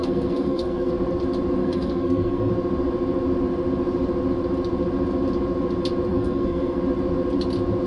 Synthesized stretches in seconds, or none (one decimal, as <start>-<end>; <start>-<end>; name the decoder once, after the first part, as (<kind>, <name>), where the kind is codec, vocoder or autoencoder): 0.0-0.9 (codec, SNAC); 1.6-2.5; 6.1-6.8